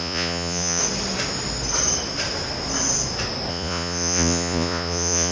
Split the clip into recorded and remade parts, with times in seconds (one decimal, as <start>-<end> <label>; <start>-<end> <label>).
0.0-0.8 remade; 0.8-3.5 recorded; 3.5-5.3 remade